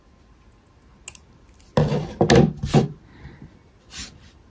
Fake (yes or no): no